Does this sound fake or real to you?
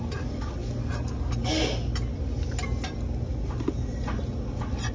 real